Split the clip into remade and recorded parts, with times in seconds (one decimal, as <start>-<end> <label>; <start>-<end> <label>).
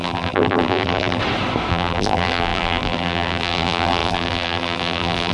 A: 0.0-1.2 remade; 1.2-1.7 recorded; 1.7-5.3 remade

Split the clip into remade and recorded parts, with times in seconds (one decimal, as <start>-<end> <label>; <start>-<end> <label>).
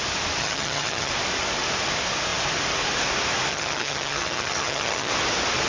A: 0.0-0.4 recorded; 0.4-1.1 remade; 1.1-3.5 recorded; 3.5-5.1 remade; 5.1-5.7 recorded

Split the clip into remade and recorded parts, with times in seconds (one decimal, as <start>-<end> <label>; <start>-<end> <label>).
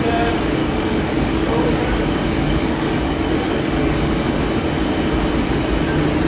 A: 0.0-0.6 recorded; 0.6-4.4 remade; 4.4-6.3 recorded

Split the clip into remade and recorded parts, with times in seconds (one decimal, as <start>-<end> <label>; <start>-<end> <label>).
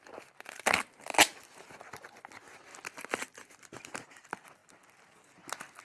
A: 0.0-5.8 recorded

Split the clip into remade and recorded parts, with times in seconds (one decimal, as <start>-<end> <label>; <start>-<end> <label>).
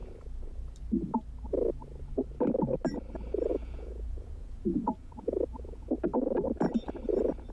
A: 0.0-3.5 recorded; 3.5-5.9 remade; 5.9-7.5 recorded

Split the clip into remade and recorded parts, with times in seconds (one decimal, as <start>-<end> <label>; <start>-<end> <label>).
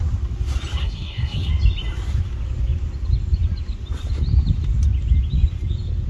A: 0.0-0.8 recorded; 0.8-1.5 remade; 1.5-6.1 recorded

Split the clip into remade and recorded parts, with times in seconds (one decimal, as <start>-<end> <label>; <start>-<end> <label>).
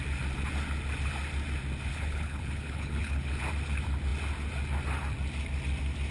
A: 0.0-1.9 recorded; 1.9-3.4 remade; 3.4-6.1 recorded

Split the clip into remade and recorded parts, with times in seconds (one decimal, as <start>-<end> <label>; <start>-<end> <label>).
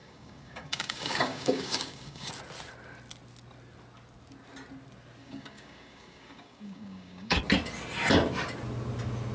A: 0.0-2.3 remade; 2.3-5.2 recorded; 5.2-7.4 remade; 7.4-9.3 recorded